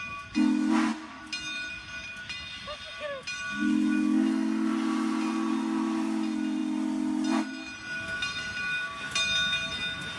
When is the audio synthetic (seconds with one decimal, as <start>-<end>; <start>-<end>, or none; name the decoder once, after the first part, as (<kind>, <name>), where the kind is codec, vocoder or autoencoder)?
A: none